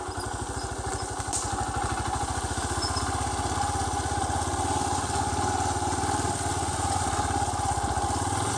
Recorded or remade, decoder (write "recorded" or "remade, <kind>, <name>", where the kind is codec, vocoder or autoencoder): recorded